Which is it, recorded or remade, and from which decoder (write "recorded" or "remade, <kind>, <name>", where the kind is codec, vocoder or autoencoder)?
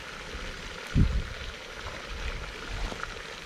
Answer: recorded